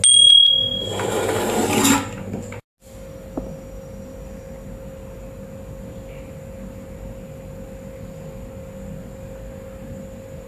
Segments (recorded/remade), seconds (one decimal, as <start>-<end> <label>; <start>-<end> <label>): 0.0-10.5 recorded